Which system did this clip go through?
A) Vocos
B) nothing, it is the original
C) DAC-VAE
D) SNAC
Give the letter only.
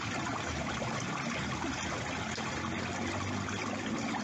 B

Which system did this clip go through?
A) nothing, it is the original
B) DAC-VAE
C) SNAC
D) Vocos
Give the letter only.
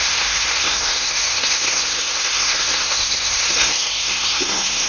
C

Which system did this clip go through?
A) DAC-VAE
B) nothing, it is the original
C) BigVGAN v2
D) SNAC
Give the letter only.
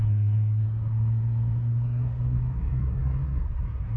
D